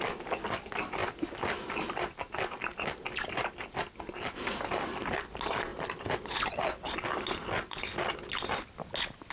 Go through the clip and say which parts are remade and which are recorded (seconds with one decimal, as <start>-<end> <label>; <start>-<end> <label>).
0.0-9.3 recorded